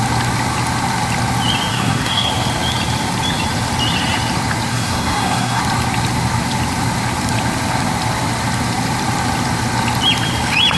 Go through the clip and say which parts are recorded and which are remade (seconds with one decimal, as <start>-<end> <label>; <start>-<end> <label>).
0.0-1.7 recorded; 1.7-2.3 remade; 2.3-4.7 recorded; 4.7-5.6 remade; 5.6-10.8 recorded